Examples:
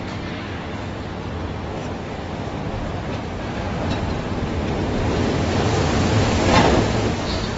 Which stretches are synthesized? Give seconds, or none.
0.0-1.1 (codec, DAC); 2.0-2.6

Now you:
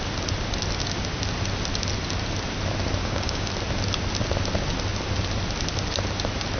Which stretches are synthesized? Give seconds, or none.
3.0-3.5 (codec, DAC)

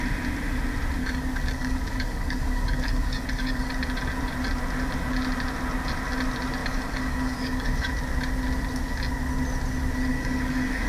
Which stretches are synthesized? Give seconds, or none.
1.0-3.7 (codec, DAC); 6.6-7.9; 10.1-10.9